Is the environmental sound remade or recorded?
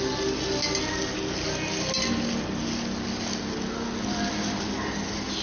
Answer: recorded